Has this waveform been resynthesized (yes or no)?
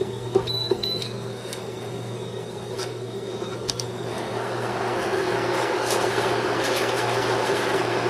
yes